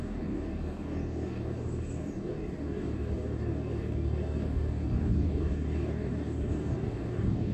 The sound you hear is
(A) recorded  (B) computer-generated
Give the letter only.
B